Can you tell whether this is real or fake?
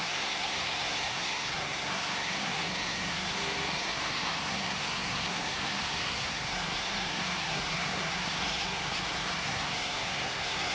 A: fake